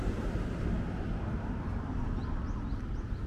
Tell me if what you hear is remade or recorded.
recorded